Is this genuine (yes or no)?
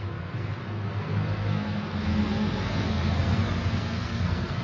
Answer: no